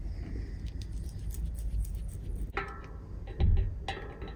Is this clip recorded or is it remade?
recorded